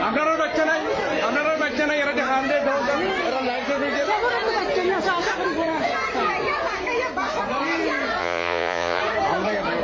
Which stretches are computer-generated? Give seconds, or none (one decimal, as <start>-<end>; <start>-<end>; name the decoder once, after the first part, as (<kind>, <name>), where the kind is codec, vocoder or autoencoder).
8.2-9.0 (vocoder, Vocos)